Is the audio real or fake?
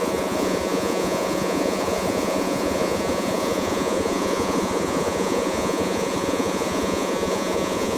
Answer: fake